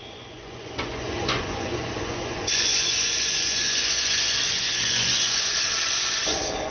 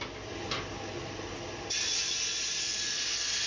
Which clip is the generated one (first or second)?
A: first